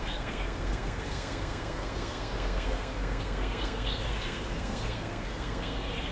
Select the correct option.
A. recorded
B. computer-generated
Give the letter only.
B